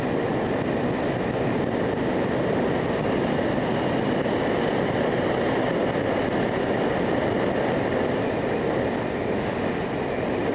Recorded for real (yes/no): yes